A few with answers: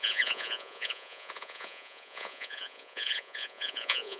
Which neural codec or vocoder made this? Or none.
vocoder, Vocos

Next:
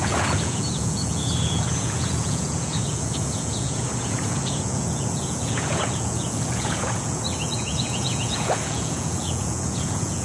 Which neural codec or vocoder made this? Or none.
vocoder, Vocos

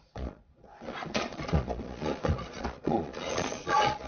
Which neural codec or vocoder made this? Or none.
vocoder, Vocos